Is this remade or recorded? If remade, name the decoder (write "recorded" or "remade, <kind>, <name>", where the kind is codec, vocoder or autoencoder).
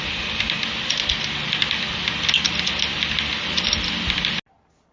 recorded